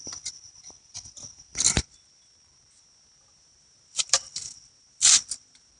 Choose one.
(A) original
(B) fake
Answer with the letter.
A